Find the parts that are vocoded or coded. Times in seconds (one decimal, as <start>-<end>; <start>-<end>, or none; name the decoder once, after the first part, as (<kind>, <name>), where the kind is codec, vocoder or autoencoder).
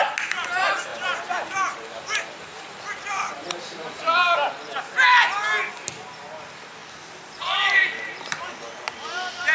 0.9-4.7 (vocoder, BigVGAN v2); 6.8-8.5